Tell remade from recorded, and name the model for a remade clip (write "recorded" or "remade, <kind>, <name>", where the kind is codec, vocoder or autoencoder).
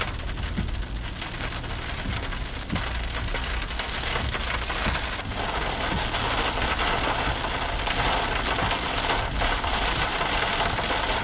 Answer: recorded